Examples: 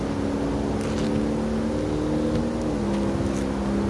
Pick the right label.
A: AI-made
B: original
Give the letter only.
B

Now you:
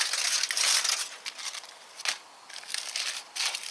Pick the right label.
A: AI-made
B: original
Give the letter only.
B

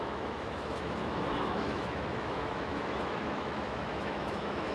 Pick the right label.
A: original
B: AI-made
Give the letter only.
B